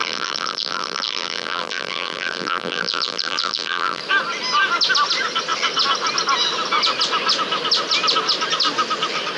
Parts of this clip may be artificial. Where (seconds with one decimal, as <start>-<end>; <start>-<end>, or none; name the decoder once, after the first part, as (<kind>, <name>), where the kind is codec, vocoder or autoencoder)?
0.0-4.0 (vocoder, BigVGAN v2)